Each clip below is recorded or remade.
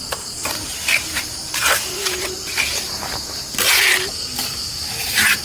remade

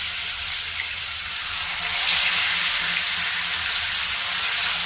remade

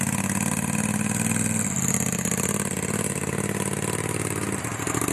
recorded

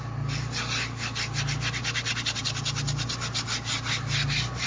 recorded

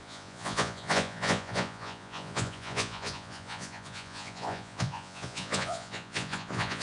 remade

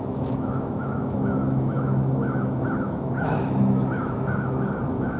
remade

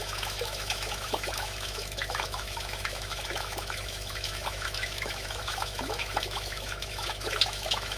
remade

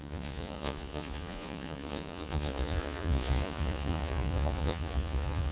remade